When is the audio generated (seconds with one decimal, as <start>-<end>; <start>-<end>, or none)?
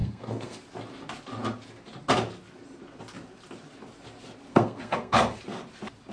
0.0-0.6; 4.5-5.4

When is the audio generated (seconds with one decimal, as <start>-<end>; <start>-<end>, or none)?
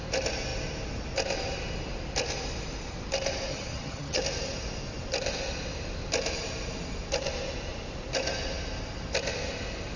3.5-4.2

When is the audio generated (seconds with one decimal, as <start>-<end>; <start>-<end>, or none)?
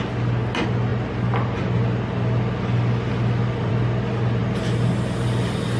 none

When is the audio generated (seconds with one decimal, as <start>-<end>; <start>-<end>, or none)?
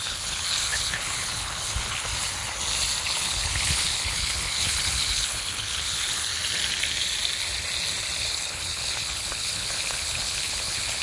0.0-2.1; 3.0-6.3; 8.2-11.0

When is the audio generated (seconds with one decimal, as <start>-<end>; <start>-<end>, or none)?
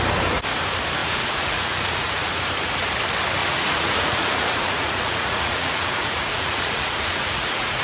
1.0-2.3; 3.4-7.8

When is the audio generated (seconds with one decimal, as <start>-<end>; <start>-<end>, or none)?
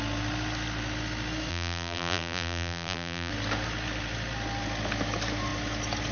1.5-3.3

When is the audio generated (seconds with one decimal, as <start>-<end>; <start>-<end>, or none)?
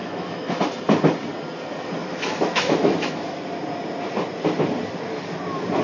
0.0-0.6; 2.0-3.4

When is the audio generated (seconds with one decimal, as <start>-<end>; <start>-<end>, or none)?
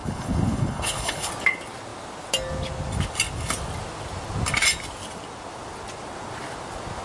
0.0-1.3